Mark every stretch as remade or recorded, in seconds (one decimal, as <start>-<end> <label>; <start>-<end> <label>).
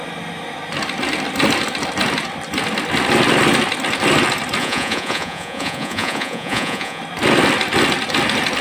0.0-4.6 recorded; 4.6-7.0 remade; 7.0-8.6 recorded